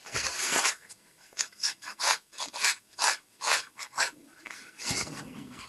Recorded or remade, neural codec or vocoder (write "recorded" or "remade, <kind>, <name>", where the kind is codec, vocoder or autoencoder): remade, codec, SNAC